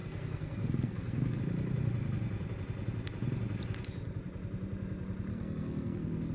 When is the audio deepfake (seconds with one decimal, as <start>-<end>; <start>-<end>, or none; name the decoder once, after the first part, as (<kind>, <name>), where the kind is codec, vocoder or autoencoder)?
0.0-1.4 (codec, SNAC); 5.3-6.3